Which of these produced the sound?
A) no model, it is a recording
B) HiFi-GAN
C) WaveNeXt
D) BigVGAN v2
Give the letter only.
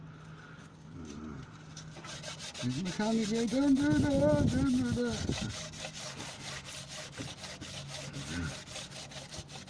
A